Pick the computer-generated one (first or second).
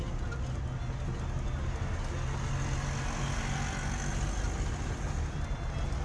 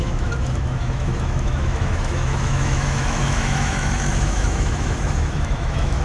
second